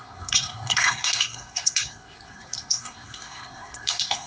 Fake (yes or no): yes